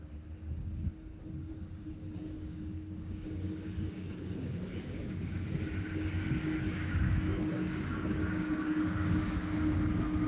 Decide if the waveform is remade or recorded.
remade